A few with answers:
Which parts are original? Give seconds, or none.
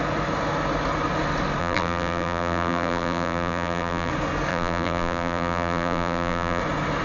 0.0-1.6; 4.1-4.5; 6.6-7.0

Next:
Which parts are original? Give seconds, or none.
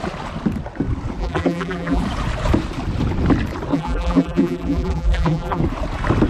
0.0-1.2; 2.0-3.7; 5.6-6.3